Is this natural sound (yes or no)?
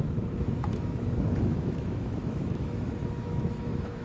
no